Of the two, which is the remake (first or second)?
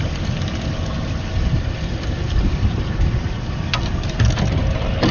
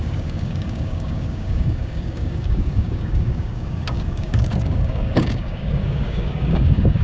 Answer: second